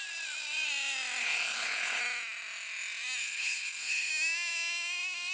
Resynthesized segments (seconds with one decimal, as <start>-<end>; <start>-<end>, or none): 1.2-2.0; 3.2-4.1